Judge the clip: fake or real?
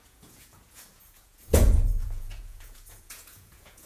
fake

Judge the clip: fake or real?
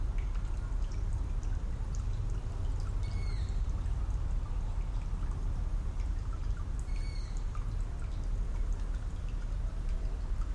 fake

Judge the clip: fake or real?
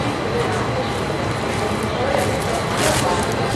real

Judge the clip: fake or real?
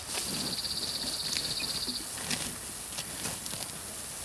real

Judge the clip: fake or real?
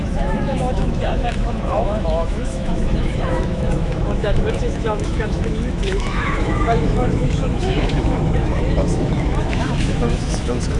fake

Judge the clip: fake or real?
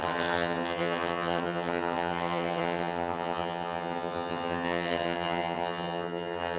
fake